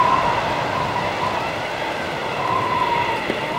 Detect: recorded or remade recorded